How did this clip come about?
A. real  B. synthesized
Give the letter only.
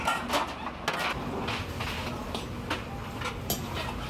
A